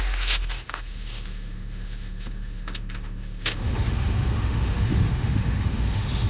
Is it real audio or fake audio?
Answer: fake